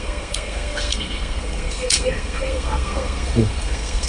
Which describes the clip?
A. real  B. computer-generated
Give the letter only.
B